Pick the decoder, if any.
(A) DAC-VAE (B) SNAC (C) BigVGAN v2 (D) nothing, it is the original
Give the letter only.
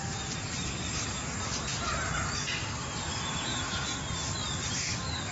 C